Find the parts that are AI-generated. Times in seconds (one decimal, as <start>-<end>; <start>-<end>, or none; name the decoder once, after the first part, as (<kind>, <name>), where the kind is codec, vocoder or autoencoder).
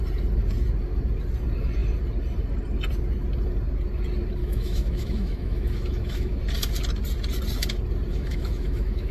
4.4-6.4 (autoencoder, DAC-VAE); 8.1-9.1